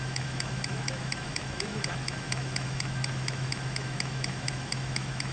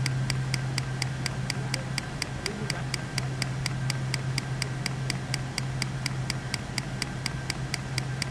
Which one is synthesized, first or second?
first